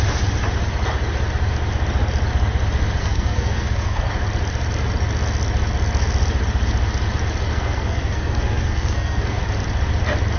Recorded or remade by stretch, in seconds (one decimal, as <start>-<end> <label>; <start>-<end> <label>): 0.0-3.0 recorded; 3.0-4.1 remade; 4.1-7.5 recorded; 7.5-9.4 remade; 9.4-10.4 recorded